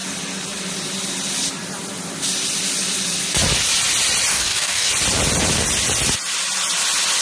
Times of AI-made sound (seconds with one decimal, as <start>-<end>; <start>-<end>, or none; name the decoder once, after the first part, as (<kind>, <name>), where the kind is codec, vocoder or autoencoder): 4.3-4.9 (codec, DAC)